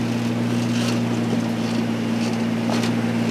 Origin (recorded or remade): recorded